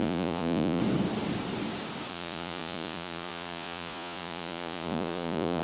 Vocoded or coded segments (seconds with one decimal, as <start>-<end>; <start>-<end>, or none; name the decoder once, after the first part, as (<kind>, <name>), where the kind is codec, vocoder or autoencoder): 0.0-0.8 (vocoder, Vocos); 2.1-5.6